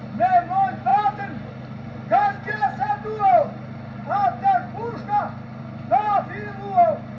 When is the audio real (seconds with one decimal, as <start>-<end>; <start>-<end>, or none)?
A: 0.0-7.2